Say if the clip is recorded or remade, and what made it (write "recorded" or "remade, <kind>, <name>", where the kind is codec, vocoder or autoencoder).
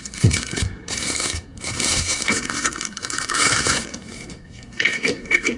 remade, codec, SNAC